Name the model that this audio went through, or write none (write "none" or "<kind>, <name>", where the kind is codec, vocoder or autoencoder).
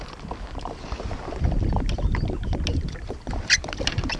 none